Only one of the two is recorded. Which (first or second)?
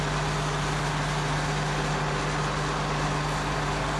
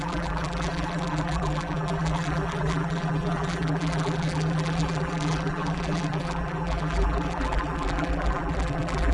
first